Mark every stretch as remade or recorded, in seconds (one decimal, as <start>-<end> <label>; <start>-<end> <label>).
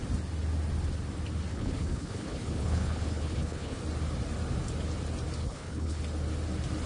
0.0-1.5 recorded; 1.5-3.8 remade; 3.8-5.4 recorded; 5.4-6.0 remade; 6.0-6.9 recorded